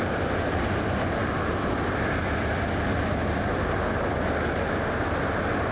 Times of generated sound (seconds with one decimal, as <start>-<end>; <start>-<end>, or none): none